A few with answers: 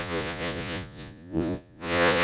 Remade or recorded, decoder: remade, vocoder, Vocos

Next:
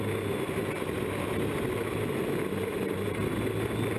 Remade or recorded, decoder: recorded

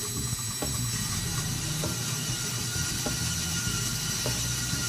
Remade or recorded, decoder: recorded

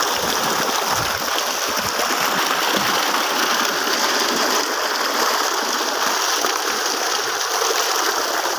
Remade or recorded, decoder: recorded